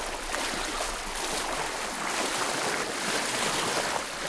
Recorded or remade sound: recorded